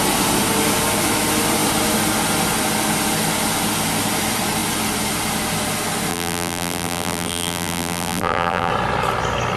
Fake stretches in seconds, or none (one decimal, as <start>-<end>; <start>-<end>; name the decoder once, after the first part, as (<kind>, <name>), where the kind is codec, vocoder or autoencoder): 6.1-8.7 (vocoder, BigVGAN v2)